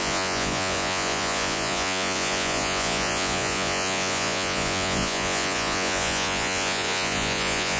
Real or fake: fake